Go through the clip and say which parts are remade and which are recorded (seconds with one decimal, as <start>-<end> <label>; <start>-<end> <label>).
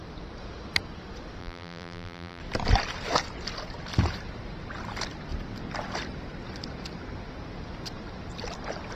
0.0-1.4 recorded; 1.4-2.4 remade; 2.4-9.0 recorded